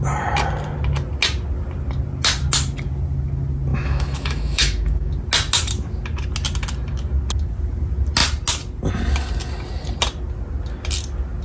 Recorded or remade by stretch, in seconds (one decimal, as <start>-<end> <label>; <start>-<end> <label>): 0.0-3.7 recorded; 3.7-5.1 remade; 5.1-11.4 recorded